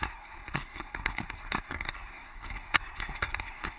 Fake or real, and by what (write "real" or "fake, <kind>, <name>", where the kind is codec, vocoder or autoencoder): fake, codec, SNAC